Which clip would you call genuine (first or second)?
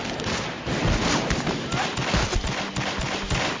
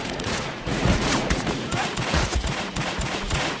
first